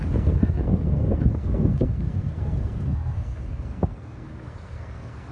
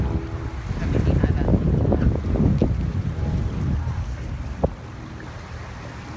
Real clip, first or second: second